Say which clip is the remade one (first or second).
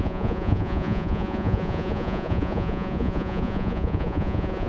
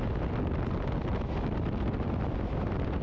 first